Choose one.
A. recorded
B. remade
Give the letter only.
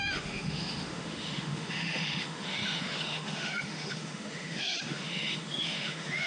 B